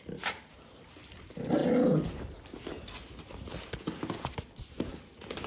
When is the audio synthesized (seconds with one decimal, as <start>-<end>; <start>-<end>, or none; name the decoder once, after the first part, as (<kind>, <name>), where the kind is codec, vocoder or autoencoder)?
none